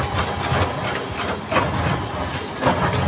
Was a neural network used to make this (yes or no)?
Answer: no